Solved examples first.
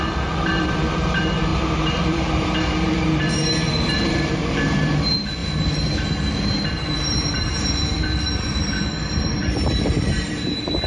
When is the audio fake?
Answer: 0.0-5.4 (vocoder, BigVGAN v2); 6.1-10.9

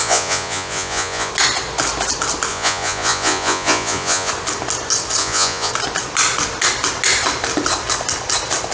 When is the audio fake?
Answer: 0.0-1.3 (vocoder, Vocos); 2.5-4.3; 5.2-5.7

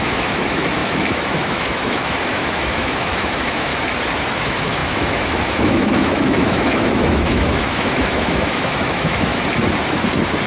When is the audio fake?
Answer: 0.0-3.7 (autoencoder, DAC-VAE); 4.3-9.3

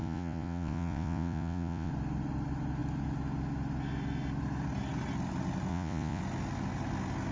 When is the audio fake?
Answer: 0.0-1.9 (vocoder, Vocos); 5.7-6.2

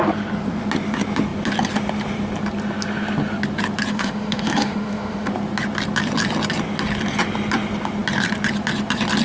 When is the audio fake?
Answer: 3.9-5.3 (autoencoder, DAC-VAE)

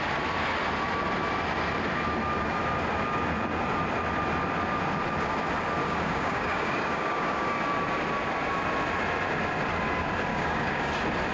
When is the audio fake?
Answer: 5.8-7.6 (codec, DAC); 10.3-10.9